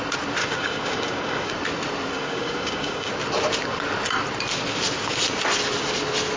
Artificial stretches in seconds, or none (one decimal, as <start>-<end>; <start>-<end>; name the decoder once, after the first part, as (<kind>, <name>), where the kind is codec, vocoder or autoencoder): 0.4-1.5 (codec, DAC); 2.1-3.1